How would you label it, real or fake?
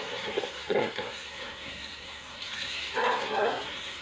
fake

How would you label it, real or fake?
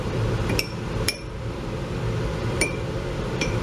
fake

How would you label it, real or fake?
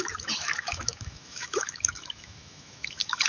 fake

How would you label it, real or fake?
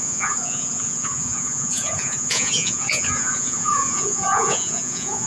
fake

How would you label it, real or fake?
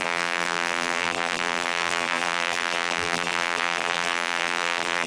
fake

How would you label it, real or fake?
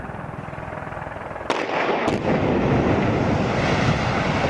real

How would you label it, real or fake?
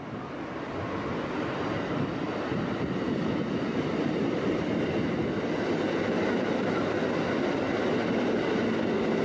real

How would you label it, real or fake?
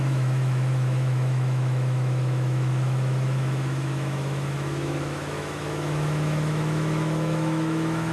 fake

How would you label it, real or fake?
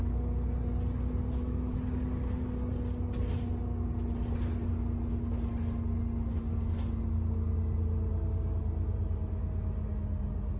real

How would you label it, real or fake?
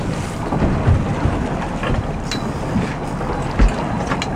real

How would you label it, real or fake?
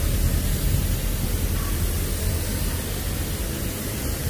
real